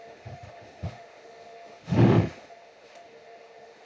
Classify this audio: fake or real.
fake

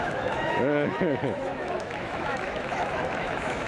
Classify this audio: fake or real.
fake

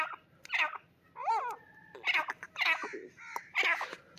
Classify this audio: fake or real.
real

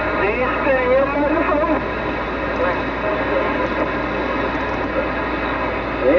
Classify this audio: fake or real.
real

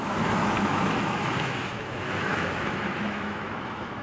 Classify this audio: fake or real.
fake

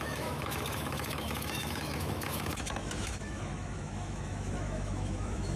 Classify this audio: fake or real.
fake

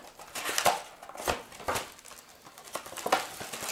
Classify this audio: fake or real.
real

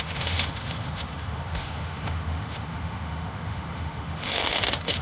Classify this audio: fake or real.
fake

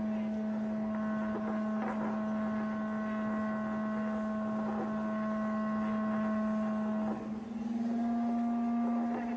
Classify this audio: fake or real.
real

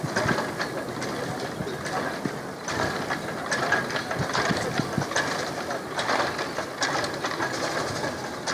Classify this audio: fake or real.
real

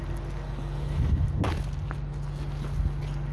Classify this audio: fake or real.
real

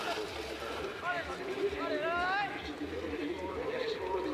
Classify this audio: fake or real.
real